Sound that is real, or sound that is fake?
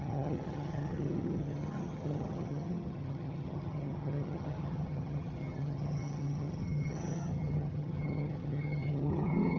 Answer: fake